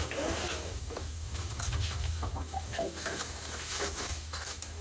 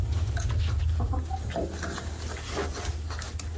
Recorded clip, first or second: second